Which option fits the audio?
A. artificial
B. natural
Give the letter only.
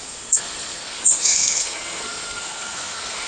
A